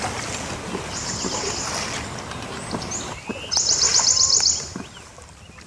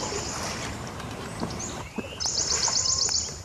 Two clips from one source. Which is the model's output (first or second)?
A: second